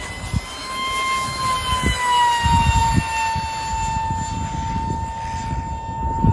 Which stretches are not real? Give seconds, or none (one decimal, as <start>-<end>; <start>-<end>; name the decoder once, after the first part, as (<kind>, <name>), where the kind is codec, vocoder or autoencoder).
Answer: 0.6-1.4 (autoencoder, DAC-VAE)